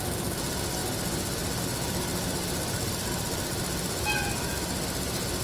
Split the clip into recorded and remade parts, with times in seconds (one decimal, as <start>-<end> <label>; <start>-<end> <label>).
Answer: 0.0-5.4 recorded